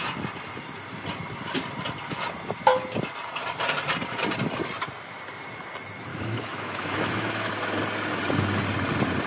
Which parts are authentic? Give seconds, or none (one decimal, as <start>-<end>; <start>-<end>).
0.0-6.1; 7.5-9.3